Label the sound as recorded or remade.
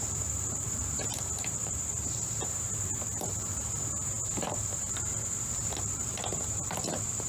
remade